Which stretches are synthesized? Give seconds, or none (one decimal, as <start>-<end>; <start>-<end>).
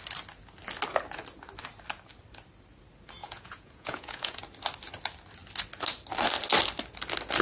3.2-4.4